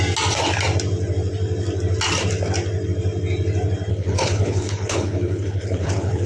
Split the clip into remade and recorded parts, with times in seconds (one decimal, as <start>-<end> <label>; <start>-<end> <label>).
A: 0.0-3.9 recorded; 3.9-6.3 remade